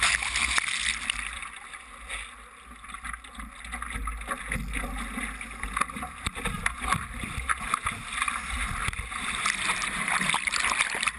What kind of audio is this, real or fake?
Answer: real